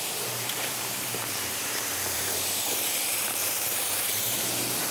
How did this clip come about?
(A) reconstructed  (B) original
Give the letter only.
A